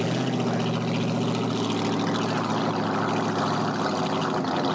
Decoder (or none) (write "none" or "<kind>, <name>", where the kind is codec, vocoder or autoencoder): none